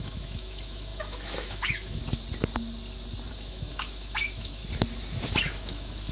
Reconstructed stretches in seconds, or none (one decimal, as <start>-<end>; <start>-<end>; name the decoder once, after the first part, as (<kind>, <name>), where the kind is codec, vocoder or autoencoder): 0.0-2.0 (autoencoder, DAC-VAE); 3.3-4.6; 5.4-6.1

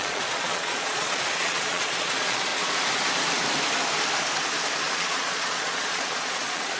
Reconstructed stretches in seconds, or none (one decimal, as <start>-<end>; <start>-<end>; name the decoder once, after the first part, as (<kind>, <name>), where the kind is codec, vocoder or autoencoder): 0.0-2.5 (vocoder, Vocos); 4.8-6.8

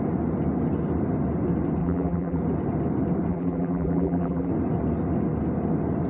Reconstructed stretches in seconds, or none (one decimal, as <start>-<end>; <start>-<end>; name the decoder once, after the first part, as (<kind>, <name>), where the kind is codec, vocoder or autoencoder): 1.8-2.4 (vocoder, BigVGAN v2); 3.3-4.5

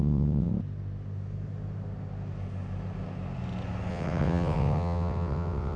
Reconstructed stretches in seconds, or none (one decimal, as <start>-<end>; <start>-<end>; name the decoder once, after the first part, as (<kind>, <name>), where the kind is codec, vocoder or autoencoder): 0.0-0.5 (vocoder, WaveNeXt); 3.9-5.8

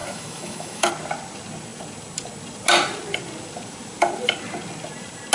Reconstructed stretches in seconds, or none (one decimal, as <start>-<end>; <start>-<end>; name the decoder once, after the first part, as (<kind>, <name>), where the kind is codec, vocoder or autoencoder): 0.0-0.9 (autoencoder, DAC-VAE)